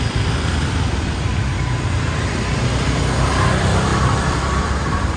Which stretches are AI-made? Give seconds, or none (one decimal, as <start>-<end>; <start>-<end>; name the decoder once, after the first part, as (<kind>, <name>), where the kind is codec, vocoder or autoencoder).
3.9-5.2 (vocoder, BigVGAN v2)